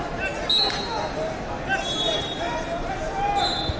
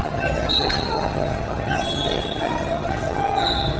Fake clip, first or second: second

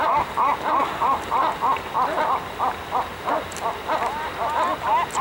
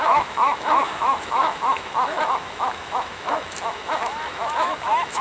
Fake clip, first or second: second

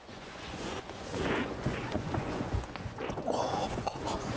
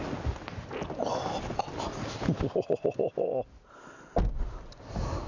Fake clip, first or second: first